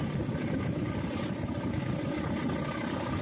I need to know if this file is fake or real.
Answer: real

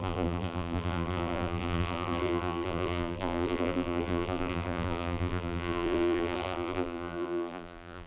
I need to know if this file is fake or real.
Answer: fake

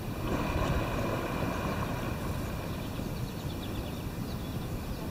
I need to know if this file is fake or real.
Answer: real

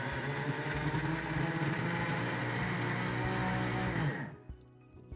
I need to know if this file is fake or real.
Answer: real